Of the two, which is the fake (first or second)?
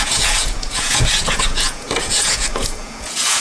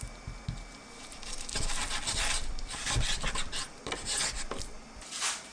first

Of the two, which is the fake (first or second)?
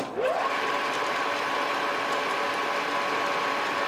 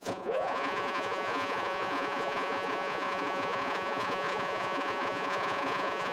second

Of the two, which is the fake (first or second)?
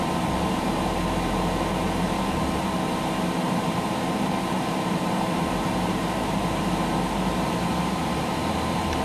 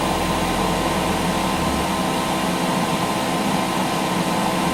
first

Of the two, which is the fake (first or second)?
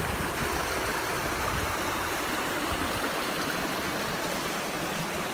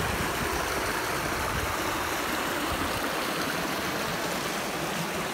first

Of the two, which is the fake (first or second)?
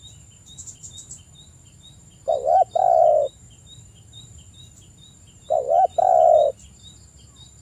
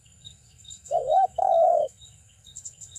second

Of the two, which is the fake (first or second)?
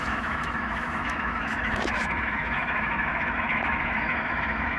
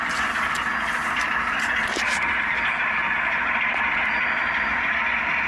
first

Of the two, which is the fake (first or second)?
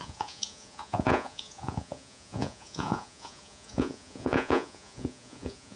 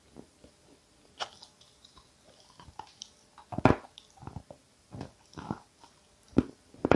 first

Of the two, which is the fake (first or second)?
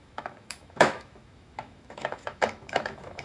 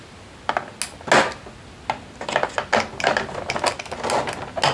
first